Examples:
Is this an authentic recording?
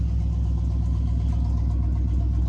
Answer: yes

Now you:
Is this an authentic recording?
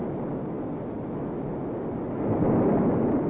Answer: yes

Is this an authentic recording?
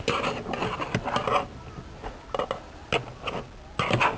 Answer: yes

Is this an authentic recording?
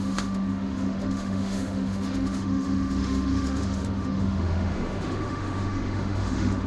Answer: no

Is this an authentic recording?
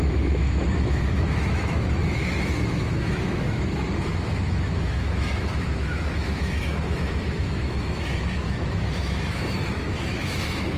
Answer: no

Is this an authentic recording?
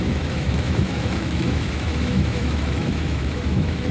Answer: no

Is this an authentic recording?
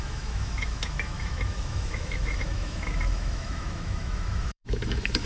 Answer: no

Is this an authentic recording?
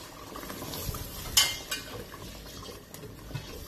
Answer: yes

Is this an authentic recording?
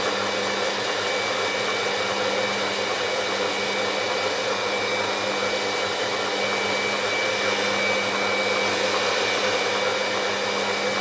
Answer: yes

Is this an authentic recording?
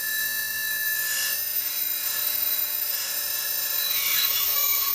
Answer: no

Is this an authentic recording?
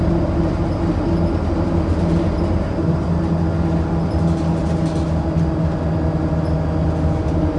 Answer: yes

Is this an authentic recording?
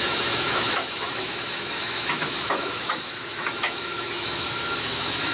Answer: no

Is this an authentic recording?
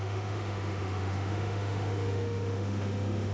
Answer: no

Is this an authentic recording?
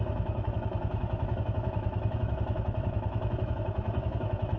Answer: no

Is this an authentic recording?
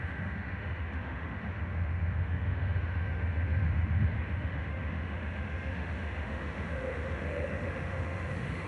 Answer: no